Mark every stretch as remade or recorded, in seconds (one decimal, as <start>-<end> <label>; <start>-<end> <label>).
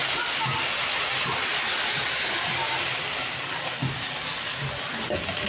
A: 0.0-5.5 recorded